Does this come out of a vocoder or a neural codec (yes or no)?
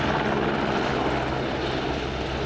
no